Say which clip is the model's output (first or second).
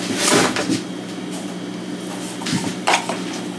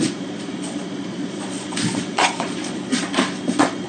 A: second